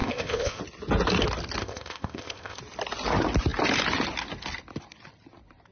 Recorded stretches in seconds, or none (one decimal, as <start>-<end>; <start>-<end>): 0.6-1.6; 2.6-5.7